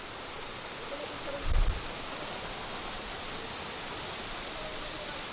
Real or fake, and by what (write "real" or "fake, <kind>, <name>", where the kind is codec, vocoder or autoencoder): real